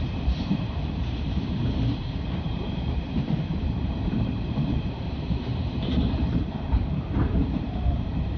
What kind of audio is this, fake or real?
fake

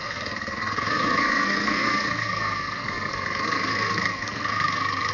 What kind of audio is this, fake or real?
fake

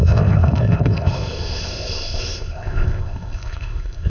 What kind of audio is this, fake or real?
fake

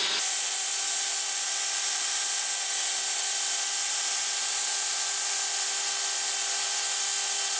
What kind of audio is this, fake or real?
real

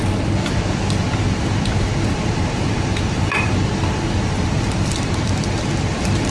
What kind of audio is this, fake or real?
fake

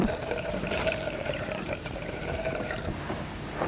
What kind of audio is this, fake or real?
fake